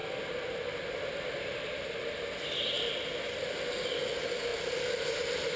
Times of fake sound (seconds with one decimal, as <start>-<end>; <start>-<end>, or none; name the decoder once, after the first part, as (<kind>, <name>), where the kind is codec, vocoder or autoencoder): none